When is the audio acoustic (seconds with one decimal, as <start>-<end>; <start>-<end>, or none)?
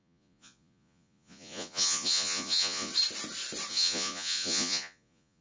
2.9-3.7